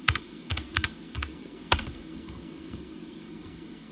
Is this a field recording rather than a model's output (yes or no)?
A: no